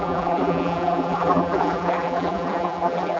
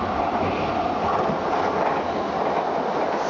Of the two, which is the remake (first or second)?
first